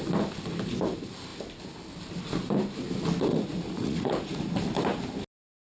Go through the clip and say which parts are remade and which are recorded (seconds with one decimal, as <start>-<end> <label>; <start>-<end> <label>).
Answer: 0.0-3.3 recorded; 3.3-4.5 remade; 4.5-5.7 recorded

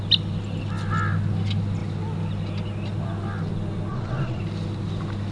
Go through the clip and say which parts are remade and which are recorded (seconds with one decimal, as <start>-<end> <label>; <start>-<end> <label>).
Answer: 0.0-3.9 recorded; 3.9-4.4 remade; 4.4-5.3 recorded

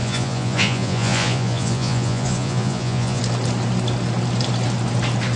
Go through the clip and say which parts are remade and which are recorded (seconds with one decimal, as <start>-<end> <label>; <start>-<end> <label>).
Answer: 0.0-3.2 remade; 3.2-5.4 recorded

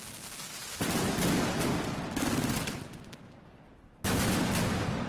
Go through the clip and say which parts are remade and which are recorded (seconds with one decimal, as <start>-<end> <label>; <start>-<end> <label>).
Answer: 0.0-5.1 recorded

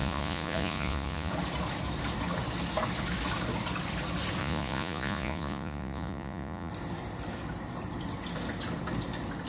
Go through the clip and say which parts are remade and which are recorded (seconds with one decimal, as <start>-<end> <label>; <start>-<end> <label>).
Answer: 0.0-1.3 remade; 1.3-4.4 recorded; 4.4-6.7 remade; 6.7-9.5 recorded